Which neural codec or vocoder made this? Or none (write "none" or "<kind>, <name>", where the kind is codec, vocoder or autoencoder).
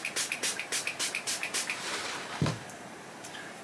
vocoder, BigVGAN v2